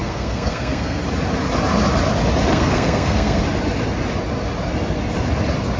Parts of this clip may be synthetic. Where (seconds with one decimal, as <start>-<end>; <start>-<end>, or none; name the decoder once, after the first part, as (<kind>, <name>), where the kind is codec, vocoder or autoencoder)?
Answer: 0.0-1.0 (codec, SNAC); 2.5-3.4